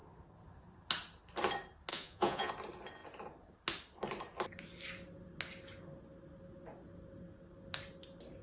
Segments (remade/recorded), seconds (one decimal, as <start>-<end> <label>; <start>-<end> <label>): 0.0-1.9 recorded; 1.9-2.5 remade; 2.5-8.4 recorded